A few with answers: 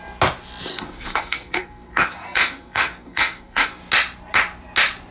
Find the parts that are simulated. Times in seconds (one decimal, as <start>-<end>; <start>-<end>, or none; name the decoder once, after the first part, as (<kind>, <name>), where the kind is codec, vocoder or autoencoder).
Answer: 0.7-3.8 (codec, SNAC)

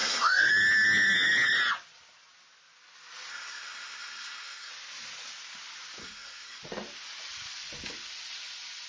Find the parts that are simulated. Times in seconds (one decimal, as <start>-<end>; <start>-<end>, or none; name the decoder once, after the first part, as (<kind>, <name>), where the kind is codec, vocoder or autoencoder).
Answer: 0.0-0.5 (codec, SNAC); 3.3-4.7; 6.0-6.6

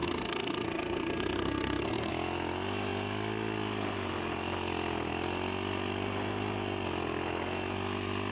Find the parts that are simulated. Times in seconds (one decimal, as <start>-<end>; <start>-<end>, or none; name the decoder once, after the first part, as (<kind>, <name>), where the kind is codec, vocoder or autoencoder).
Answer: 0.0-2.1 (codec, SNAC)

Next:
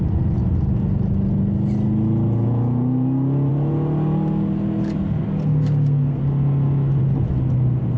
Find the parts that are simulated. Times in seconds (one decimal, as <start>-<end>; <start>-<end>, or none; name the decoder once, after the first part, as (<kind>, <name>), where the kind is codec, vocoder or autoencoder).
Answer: 5.4-6.2 (codec, SNAC)